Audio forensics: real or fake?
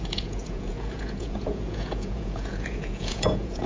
fake